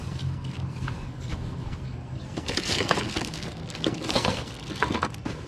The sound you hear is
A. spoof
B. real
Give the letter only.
A